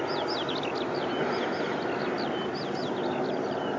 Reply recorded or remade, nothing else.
recorded